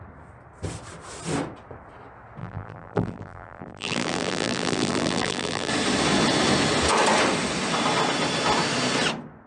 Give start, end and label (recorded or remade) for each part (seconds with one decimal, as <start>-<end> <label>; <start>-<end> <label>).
0.0-2.4 recorded; 2.4-5.7 remade; 5.7-9.5 recorded